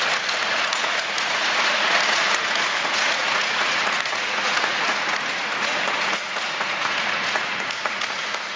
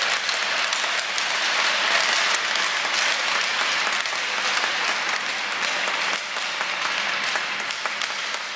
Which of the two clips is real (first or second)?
second